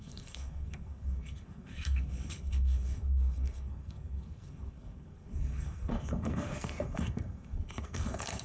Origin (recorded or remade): remade